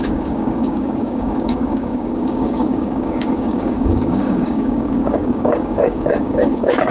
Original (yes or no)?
no